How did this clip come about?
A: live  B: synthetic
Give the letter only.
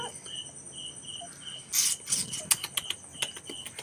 A